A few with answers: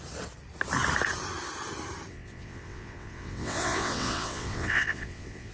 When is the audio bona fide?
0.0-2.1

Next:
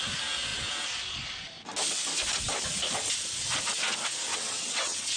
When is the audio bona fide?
0.0-4.3

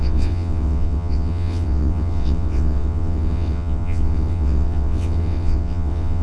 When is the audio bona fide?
none

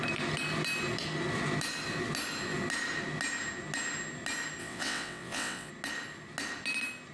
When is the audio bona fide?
0.0-4.6; 5.7-7.1

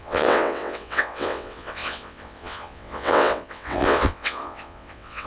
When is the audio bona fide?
none